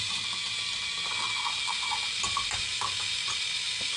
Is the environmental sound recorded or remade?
remade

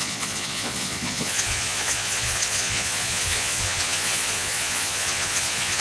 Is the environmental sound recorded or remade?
remade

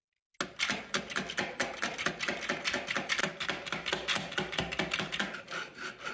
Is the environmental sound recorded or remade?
recorded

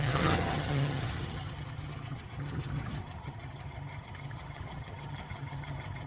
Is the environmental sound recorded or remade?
remade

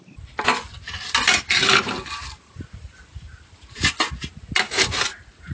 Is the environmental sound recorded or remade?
recorded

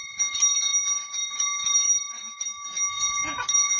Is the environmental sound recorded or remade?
recorded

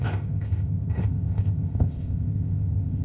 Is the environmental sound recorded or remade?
remade